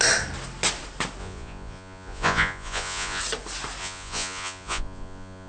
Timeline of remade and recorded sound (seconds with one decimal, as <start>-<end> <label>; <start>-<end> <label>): 0.0-1.2 recorded; 1.2-3.2 remade; 3.2-3.8 recorded; 3.8-5.5 remade